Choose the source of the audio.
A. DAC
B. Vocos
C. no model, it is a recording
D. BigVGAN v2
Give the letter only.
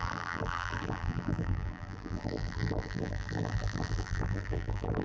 D